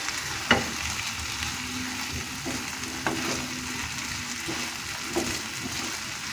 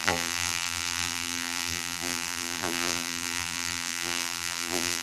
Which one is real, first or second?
first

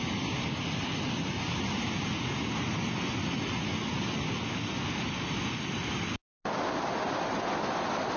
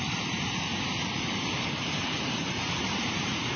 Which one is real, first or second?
first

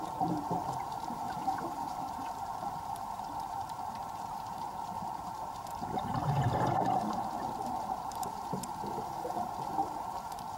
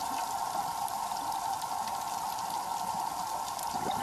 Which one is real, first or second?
second